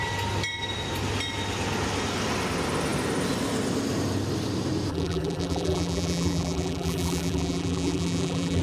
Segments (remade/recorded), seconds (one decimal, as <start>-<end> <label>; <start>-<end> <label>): 0.0-4.9 recorded; 4.9-8.6 remade